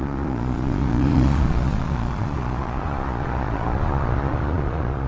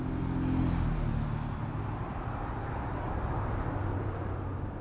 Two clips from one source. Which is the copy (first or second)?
first